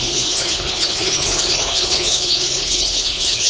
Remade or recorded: remade